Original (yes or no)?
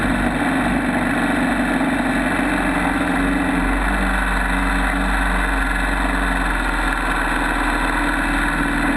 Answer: yes